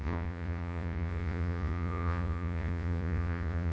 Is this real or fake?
fake